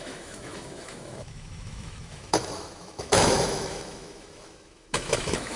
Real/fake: fake